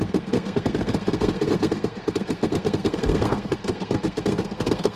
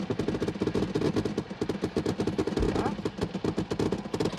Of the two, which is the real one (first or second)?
second